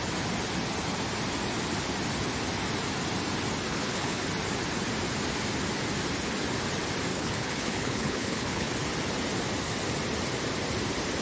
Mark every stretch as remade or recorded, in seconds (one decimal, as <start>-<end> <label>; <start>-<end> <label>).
0.0-3.7 recorded; 3.7-4.2 remade; 4.2-7.1 recorded; 7.1-8.7 remade; 8.7-11.2 recorded